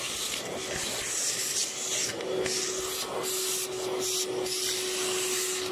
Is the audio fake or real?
real